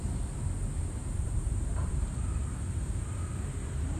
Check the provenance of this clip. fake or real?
fake